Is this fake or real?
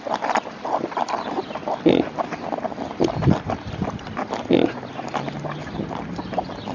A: real